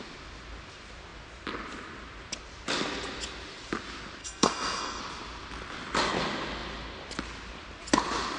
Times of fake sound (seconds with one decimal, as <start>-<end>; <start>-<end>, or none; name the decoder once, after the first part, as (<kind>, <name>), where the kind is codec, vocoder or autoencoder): 4.2-5.0 (codec, SNAC)